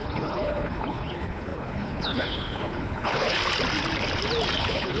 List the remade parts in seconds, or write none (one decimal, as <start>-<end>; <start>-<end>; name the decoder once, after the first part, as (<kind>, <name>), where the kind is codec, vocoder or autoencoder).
0.0-3.4 (codec, HILCodec); 4.6-5.0